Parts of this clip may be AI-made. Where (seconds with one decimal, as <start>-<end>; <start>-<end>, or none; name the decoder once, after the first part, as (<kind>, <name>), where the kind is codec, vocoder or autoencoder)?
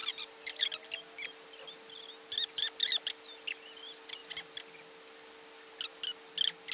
none